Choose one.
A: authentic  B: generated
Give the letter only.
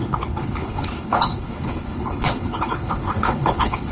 B